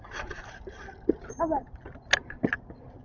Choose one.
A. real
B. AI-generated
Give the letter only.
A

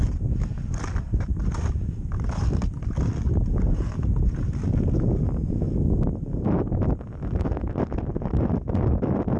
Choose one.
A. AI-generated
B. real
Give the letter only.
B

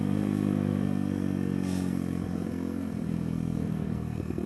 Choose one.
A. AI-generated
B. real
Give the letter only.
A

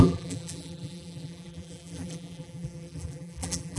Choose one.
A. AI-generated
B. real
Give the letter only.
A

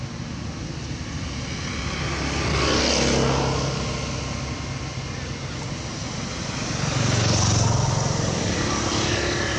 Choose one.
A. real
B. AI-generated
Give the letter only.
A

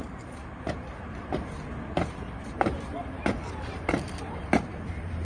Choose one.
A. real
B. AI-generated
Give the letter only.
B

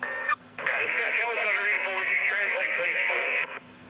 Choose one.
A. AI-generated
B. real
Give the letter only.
A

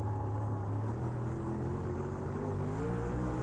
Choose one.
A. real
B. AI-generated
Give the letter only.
B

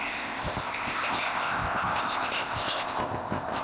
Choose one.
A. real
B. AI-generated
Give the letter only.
B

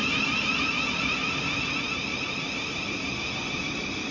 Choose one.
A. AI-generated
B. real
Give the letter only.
B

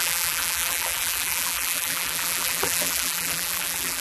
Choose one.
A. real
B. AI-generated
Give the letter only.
B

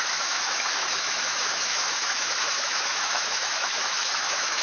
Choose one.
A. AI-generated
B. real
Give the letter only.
A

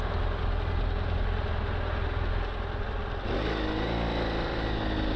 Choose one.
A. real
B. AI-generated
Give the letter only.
A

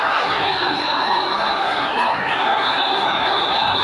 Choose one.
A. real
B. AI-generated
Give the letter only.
B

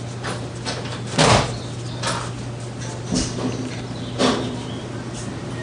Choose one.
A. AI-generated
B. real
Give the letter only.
B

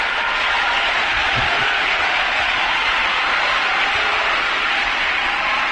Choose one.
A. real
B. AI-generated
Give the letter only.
B